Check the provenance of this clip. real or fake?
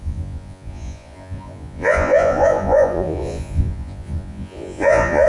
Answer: fake